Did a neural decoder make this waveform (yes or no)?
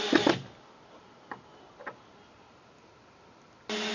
no